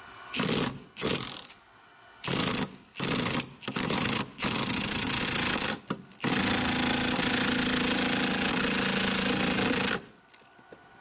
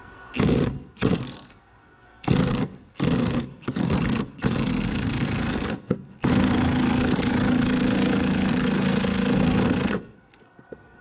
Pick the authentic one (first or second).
first